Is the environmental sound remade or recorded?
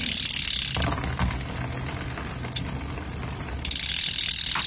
recorded